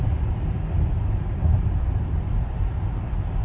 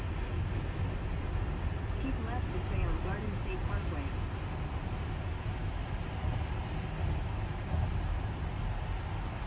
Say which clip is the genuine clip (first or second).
second